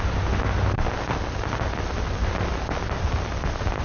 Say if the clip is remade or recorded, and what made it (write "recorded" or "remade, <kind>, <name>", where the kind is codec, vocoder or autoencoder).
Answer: recorded